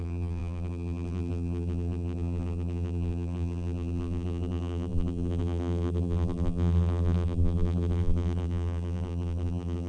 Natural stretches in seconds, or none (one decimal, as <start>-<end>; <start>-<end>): none